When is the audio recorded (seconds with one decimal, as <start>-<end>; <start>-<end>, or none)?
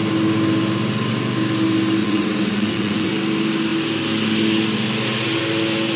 0.0-2.0; 3.1-6.0